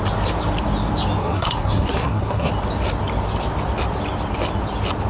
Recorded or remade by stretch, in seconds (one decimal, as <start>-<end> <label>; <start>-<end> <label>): 0.0-1.2 recorded; 1.2-2.5 remade; 2.5-5.1 recorded